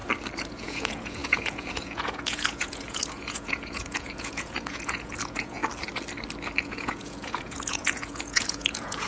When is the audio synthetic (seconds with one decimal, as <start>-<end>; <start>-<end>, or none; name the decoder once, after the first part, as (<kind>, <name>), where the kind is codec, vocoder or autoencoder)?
0.5-5.6 (vocoder, Vocos); 6.6-9.1